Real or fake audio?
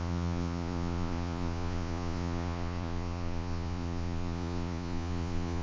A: fake